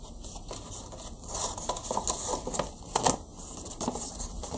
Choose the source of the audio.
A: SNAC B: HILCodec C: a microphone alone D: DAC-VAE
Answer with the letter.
C